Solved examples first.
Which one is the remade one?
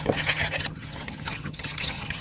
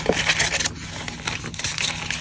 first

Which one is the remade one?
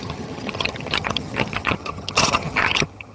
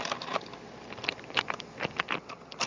first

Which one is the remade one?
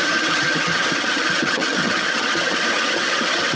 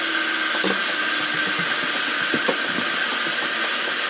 first